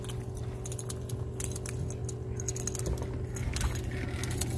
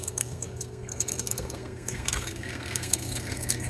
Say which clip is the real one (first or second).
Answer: first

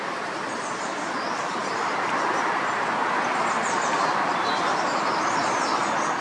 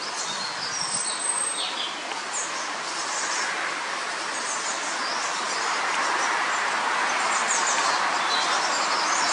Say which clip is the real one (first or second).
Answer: second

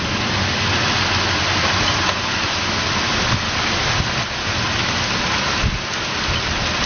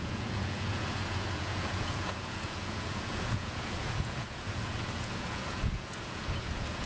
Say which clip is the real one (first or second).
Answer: first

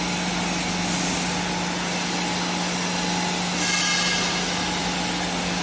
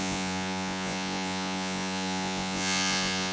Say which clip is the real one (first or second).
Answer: first